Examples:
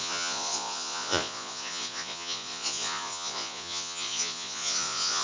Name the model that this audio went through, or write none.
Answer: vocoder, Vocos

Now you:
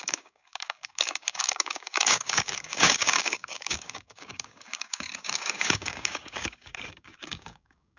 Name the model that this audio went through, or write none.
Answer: codec, DAC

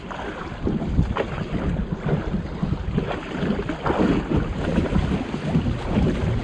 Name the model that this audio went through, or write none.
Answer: none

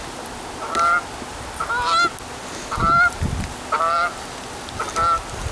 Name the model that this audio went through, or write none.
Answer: none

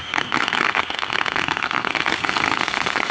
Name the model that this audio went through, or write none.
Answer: codec, SNAC